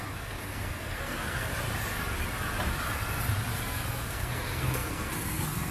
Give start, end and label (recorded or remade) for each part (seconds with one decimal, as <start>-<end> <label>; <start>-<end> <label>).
0.0-1.5 remade; 1.5-3.5 recorded; 3.5-5.7 remade

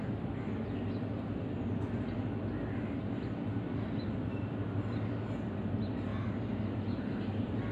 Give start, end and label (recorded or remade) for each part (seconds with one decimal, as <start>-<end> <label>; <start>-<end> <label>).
0.0-7.7 recorded

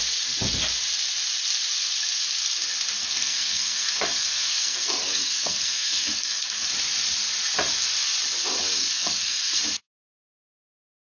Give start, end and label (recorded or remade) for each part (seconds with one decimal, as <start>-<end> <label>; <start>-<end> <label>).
0.0-3.0 recorded; 3.0-6.7 remade; 6.7-8.8 recorded; 8.8-9.6 remade; 9.6-11.1 recorded